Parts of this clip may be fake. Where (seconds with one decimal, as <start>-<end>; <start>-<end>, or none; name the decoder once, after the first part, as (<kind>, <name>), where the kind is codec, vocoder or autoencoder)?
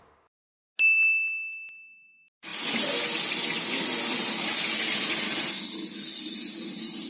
none